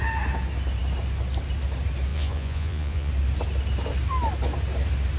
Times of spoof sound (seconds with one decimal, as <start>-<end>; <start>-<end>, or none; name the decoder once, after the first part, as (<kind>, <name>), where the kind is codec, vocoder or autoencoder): 2.1-3.1 (vocoder, Vocos)